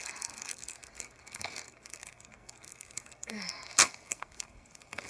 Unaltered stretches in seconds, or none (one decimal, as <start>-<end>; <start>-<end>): none